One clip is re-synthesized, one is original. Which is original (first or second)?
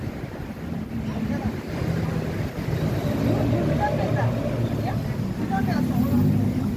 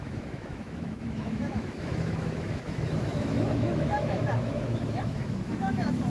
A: first